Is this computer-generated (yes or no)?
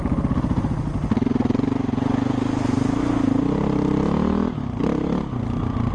no